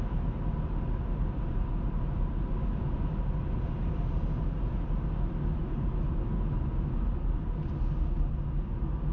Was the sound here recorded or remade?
recorded